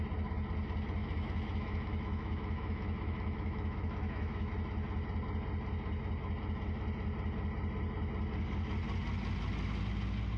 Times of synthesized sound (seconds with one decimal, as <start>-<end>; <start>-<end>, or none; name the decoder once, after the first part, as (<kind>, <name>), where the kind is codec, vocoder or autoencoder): 1.0-4.5 (autoencoder, DAC-VAE)